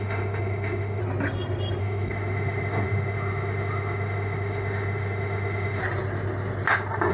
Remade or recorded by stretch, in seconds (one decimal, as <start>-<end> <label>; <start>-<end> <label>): 0.0-1.0 remade; 1.0-1.8 recorded; 1.8-5.8 remade; 5.8-7.1 recorded